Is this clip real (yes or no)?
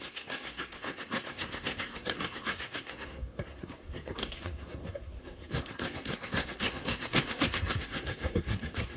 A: no